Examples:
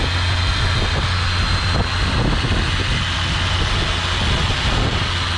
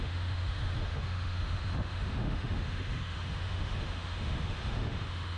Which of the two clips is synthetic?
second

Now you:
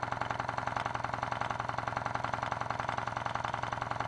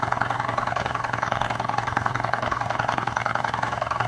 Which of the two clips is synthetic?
second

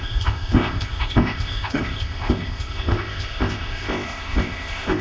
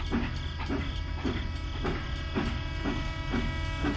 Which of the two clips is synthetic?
first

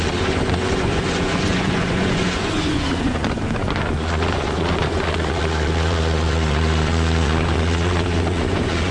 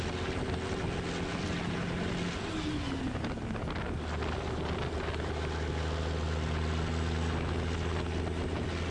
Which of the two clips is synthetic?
first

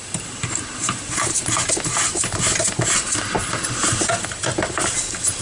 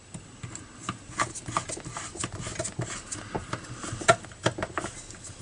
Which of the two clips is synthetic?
first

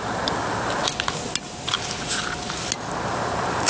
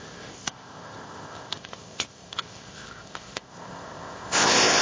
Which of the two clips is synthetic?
second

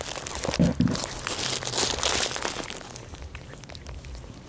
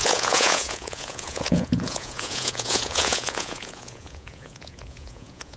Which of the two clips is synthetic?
second